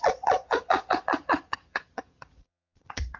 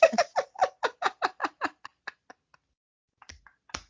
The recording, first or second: second